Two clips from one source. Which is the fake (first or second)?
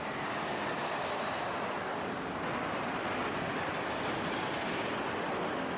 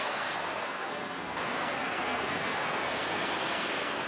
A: second